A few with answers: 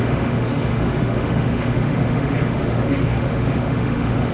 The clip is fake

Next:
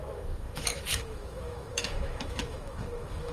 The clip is fake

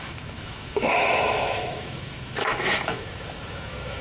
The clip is fake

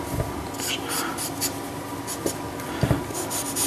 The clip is real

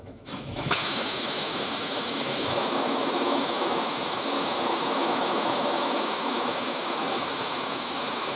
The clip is fake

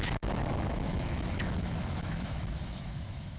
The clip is fake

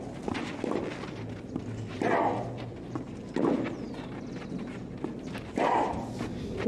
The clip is real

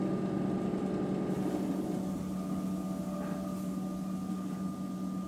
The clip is real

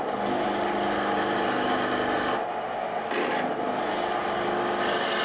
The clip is real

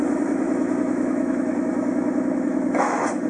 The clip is fake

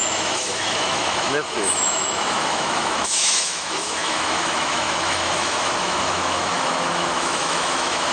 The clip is fake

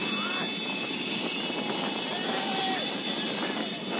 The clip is real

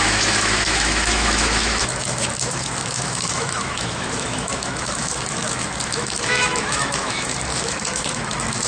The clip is fake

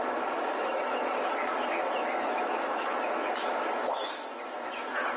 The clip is fake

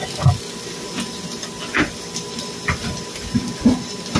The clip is real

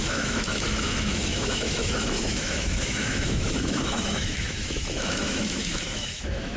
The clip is fake